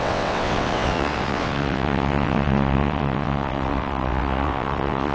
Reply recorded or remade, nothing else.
remade